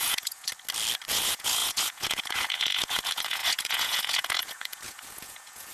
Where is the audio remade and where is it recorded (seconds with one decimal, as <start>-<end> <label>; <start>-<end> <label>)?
0.0-0.5 remade; 0.5-1.1 recorded; 1.1-5.7 remade